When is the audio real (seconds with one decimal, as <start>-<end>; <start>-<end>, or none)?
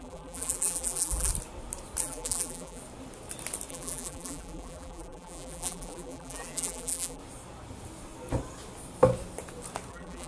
1.3-2.0; 2.8-3.7; 7.2-9.9